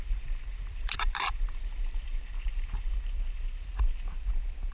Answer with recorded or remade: remade